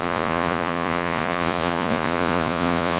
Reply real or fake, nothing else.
fake